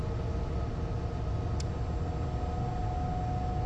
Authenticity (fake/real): real